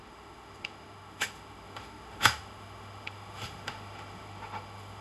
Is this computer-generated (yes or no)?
yes